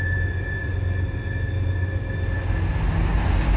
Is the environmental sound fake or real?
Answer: real